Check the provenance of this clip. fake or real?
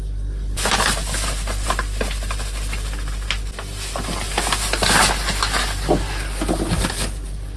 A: real